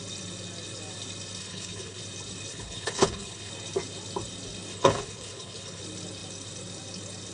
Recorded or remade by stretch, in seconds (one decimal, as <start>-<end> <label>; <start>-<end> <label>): 0.0-1.4 recorded; 1.4-2.0 remade; 2.0-2.5 recorded; 2.5-3.5 remade; 3.5-4.7 recorded; 4.7-5.8 remade; 5.8-7.3 recorded